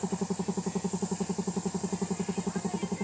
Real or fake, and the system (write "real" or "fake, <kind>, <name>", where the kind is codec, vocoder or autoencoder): real